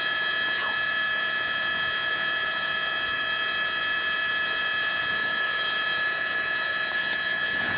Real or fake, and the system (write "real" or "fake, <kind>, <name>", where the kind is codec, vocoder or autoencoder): fake, vocoder, Vocos